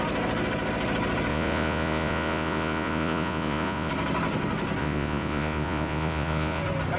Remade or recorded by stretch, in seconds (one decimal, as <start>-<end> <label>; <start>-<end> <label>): 0.0-1.3 recorded; 1.3-3.9 remade; 3.9-4.8 recorded; 4.8-6.6 remade; 6.6-7.0 recorded